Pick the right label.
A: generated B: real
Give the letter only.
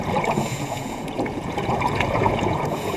A